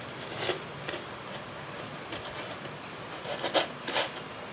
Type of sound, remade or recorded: recorded